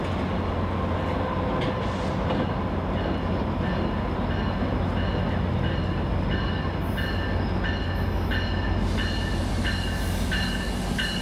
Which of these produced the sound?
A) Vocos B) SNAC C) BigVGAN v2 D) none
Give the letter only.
D